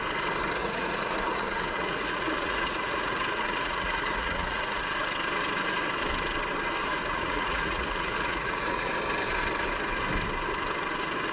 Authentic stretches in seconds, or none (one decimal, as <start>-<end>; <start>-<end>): 0.0-0.6; 4.8-6.9; 8.9-11.3